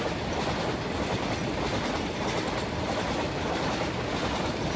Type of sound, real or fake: real